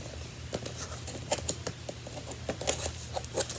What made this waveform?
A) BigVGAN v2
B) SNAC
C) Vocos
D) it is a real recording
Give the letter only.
D